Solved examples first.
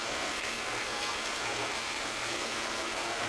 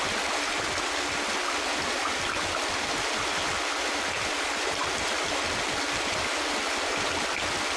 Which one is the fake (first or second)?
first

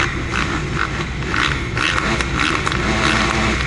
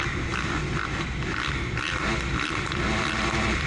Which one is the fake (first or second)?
second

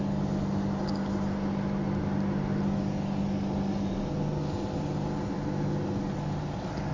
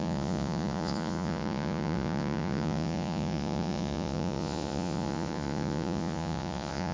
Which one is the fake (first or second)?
second